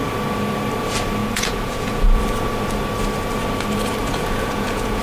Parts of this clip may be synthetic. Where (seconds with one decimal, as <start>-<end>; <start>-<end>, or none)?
1.2-2.2; 4.0-5.0